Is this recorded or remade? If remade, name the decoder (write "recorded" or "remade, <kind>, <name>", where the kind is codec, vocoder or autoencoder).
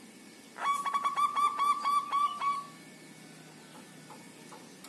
recorded